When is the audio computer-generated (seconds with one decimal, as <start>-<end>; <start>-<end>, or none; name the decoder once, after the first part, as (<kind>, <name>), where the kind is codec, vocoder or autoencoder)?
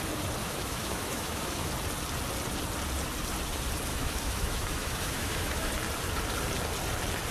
0.4-1.7 (autoencoder, DAC-VAE); 3.9-5.7